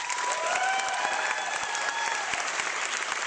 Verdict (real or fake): real